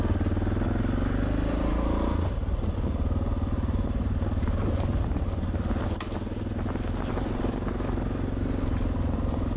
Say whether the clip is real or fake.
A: real